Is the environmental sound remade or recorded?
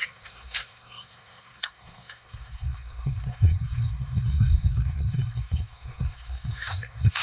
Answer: remade